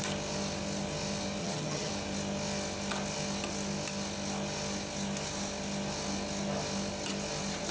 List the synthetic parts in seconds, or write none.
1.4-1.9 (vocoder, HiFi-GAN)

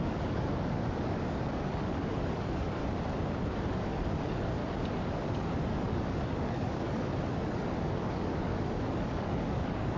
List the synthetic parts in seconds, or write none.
0.0-2.8 (codec, DAC); 3.9-4.6; 5.1-10.0

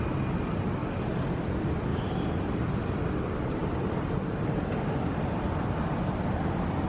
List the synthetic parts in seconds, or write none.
1.9-4.8 (vocoder, BigVGAN v2)

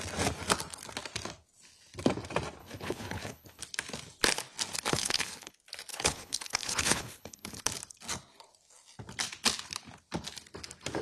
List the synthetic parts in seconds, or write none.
2.6-3.6 (codec, HILCodec); 4.9-5.5; 5.9-7.6

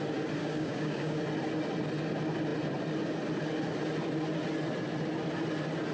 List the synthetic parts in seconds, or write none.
0.4-1.2 (codec, DAC)